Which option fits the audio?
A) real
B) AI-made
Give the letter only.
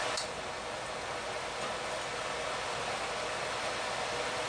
A